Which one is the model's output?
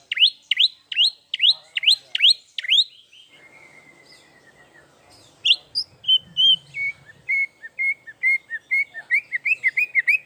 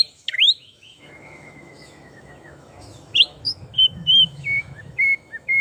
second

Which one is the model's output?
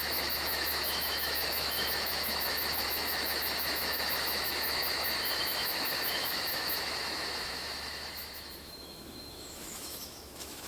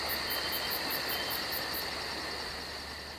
first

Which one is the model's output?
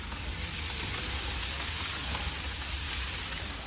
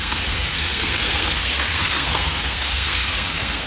second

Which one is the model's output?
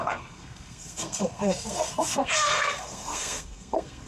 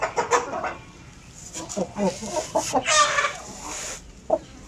first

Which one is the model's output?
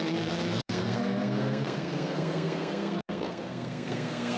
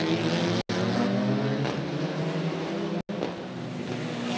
first